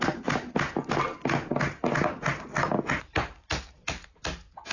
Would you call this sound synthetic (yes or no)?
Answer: no